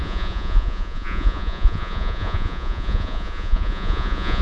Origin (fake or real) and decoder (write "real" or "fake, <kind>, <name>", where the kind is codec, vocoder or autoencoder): fake, vocoder, Vocos